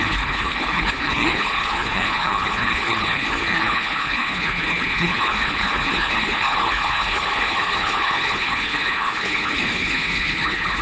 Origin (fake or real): fake